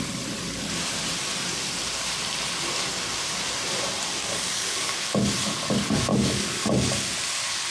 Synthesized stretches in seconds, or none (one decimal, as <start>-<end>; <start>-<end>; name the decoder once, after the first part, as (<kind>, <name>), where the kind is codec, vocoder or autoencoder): 4.2-5.1 (codec, DAC); 6.1-6.6